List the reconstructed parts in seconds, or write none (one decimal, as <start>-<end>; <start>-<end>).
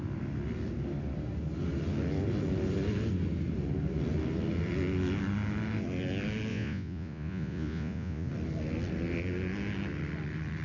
6.5-8.3